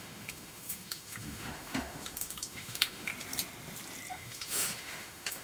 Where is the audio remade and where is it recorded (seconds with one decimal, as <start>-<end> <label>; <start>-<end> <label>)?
0.0-3.1 remade; 3.1-4.1 recorded; 4.1-5.4 remade